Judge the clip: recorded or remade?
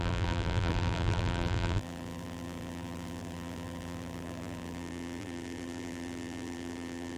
remade